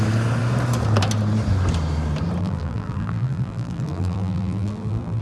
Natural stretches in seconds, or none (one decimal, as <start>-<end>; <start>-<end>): 0.0-2.4

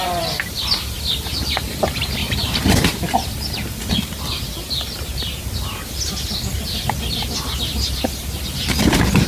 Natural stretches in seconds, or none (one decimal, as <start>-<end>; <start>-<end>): 0.0-9.3